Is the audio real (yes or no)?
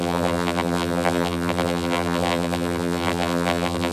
no